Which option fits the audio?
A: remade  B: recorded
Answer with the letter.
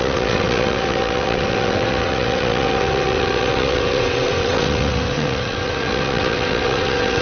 A